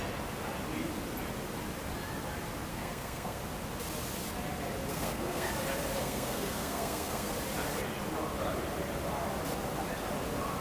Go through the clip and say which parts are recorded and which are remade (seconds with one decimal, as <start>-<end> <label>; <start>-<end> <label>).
0.0-2.7 recorded; 2.7-3.4 remade; 3.4-4.9 recorded; 4.9-5.5 remade; 5.5-6.0 recorded; 6.0-7.3 remade; 7.3-10.6 recorded

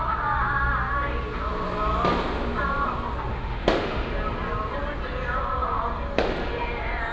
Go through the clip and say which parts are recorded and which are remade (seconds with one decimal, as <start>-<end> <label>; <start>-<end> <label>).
0.0-3.3 recorded; 3.3-4.1 remade; 4.1-7.1 recorded

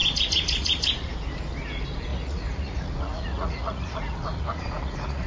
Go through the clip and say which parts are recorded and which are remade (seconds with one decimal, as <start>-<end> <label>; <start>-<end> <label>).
0.0-1.1 remade; 1.1-2.1 recorded; 2.1-5.3 remade

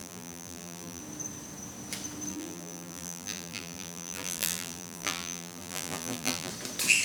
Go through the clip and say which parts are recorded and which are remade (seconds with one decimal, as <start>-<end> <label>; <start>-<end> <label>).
0.0-1.0 remade; 1.0-2.3 recorded; 2.3-6.5 remade; 6.5-7.0 recorded